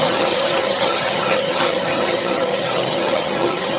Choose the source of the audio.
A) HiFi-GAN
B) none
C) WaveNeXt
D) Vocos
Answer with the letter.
A